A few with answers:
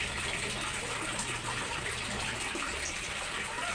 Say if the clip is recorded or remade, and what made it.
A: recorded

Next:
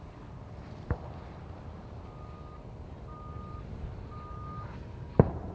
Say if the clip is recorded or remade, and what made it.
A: recorded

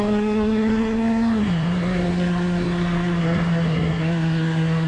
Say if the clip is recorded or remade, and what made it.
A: remade, codec, SNAC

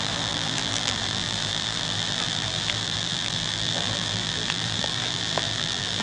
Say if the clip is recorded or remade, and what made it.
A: remade, vocoder, BigVGAN v2